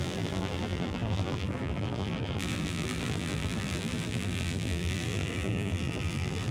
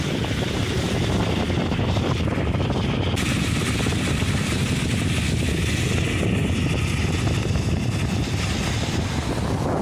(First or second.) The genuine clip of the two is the second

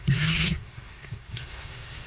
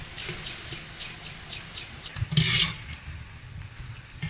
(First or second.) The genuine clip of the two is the second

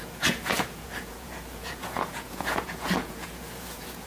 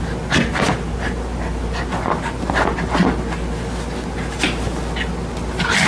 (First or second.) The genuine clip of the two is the second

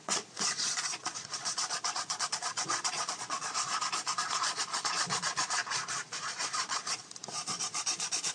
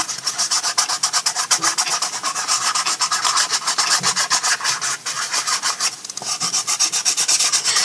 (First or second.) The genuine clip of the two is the second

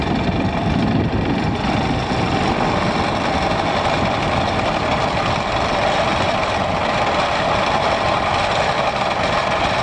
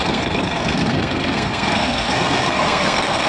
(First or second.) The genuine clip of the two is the first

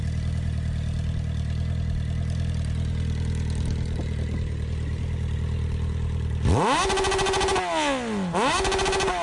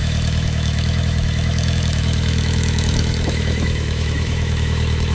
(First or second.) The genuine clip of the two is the first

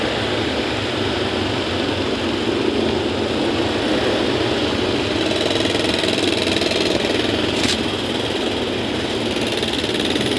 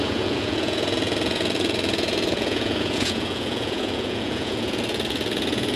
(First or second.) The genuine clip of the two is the first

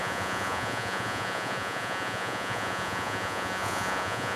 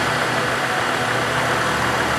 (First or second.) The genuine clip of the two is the second